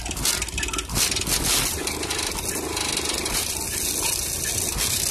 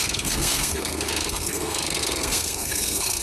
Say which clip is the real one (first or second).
first